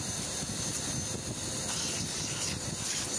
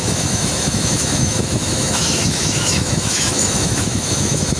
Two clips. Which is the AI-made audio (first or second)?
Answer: second